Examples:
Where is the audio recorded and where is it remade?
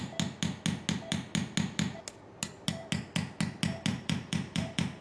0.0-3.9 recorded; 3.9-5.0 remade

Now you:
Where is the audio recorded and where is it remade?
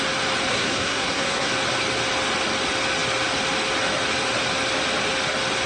0.0-0.5 recorded; 0.5-1.5 remade; 1.5-5.7 recorded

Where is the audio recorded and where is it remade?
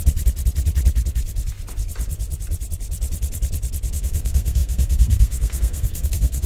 0.0-3.9 recorded; 3.9-6.5 remade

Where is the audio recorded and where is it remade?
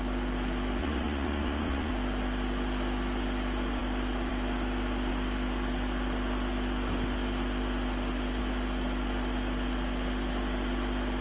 0.0-0.8 recorded; 0.8-1.9 remade; 1.9-11.2 recorded